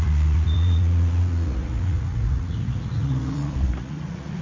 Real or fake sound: fake